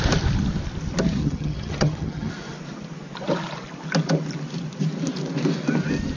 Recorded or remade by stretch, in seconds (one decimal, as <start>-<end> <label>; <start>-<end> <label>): 0.0-1.2 recorded; 1.2-2.3 remade; 2.3-6.2 recorded